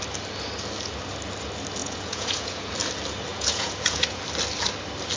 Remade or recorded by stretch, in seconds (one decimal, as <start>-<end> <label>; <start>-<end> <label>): 0.0-1.8 recorded; 1.8-2.7 remade; 2.7-3.3 recorded; 3.3-4.2 remade; 4.2-5.2 recorded